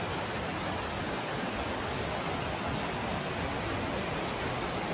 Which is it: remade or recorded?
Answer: recorded